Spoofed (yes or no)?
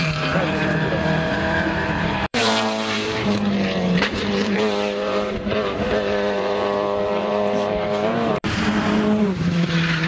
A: yes